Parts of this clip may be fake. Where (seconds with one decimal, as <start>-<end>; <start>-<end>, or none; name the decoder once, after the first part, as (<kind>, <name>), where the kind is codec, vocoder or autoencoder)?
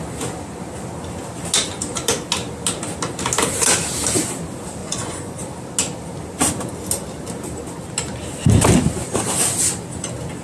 4.8-5.4 (vocoder, Vocos)